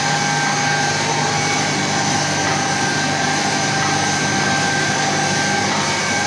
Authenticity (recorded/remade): recorded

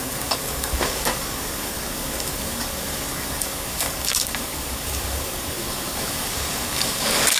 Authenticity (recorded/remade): remade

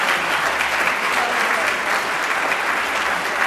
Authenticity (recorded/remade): recorded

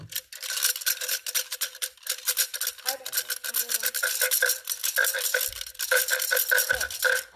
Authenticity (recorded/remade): recorded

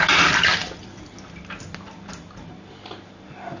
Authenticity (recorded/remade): recorded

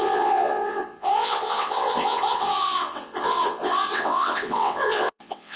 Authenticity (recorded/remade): remade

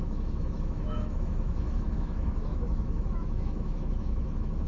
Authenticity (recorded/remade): remade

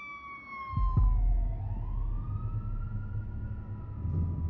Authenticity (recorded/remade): recorded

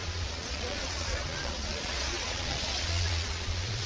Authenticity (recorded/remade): remade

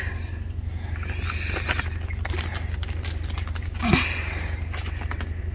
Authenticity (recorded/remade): recorded